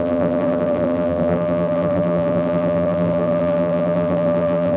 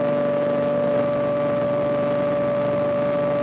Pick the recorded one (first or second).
second